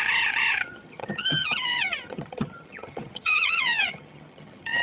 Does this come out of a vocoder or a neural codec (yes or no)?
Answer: yes